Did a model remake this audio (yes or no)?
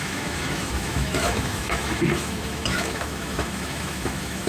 yes